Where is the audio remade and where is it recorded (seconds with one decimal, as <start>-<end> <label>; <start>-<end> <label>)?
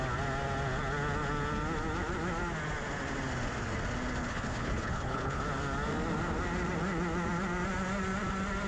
0.0-4.2 recorded; 4.2-5.4 remade; 5.4-8.7 recorded